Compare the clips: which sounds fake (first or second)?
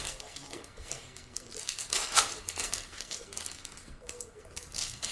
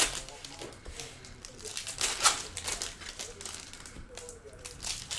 first